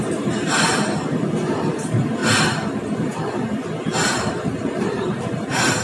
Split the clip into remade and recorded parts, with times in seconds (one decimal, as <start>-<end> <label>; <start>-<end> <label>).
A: 0.0-2.2 remade; 2.2-4.1 recorded; 4.1-5.8 remade